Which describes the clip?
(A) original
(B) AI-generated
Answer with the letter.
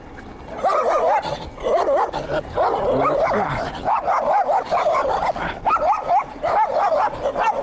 A